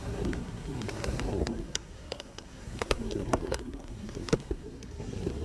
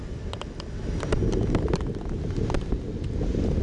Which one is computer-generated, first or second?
first